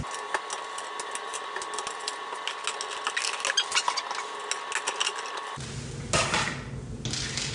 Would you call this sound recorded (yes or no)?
yes